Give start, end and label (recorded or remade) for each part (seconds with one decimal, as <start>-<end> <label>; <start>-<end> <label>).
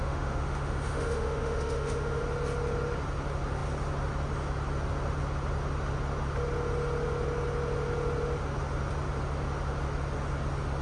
0.0-2.2 remade; 2.2-10.8 recorded